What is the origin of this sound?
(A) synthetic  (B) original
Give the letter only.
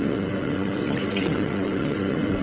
A